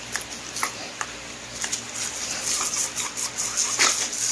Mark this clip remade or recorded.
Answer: recorded